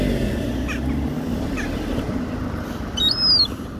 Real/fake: real